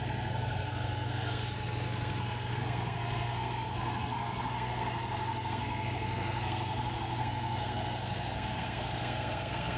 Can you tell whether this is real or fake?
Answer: fake